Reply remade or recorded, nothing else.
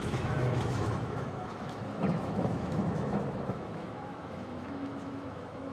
remade